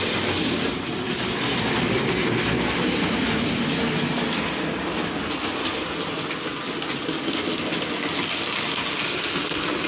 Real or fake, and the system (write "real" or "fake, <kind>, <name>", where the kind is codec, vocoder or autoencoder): real